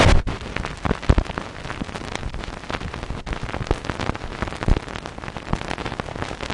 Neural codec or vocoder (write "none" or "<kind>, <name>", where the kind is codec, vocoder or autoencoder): none